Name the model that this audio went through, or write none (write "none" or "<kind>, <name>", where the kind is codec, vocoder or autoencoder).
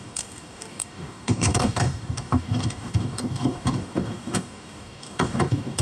codec, DAC